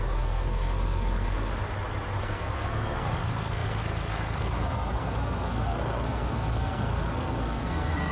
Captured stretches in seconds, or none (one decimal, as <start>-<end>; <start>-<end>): 1.5-2.2